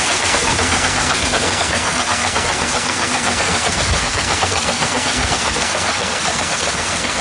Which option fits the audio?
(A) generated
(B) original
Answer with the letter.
A